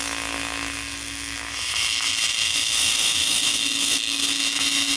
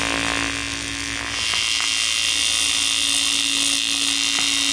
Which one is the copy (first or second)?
first